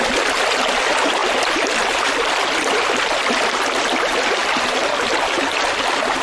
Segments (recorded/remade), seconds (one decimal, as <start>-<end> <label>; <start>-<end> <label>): 0.0-6.2 recorded